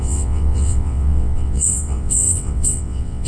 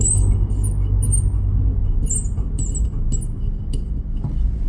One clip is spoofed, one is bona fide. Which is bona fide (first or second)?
second